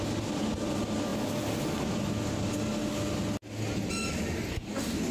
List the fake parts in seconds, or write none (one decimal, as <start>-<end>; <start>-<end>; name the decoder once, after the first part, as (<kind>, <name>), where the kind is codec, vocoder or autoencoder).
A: 4.5-5.1 (codec, DAC)